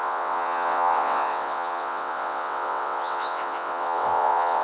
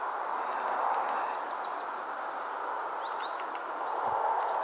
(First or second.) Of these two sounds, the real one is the second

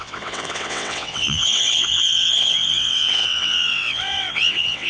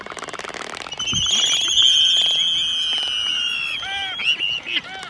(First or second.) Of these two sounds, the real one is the second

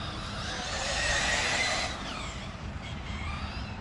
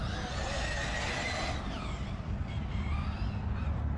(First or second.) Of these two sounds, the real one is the second